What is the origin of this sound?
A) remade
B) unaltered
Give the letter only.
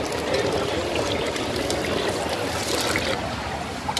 B